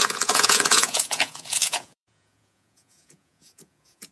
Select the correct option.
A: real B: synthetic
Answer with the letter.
B